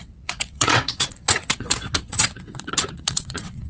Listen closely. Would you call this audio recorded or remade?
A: remade